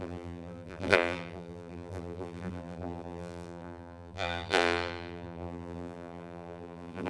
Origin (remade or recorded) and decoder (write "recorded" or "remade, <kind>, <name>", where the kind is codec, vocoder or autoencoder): remade, vocoder, BigVGAN v2